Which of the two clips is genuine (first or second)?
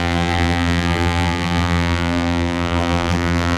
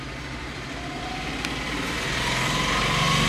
second